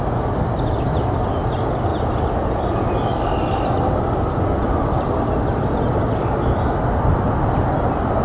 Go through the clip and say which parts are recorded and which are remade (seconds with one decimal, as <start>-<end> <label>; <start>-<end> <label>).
0.0-8.2 recorded